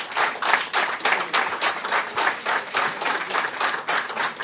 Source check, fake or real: real